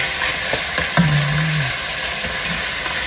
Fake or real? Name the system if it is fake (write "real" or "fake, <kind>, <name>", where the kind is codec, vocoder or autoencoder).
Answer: real